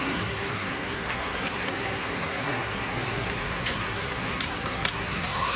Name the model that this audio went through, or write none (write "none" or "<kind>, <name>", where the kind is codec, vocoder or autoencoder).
codec, SNAC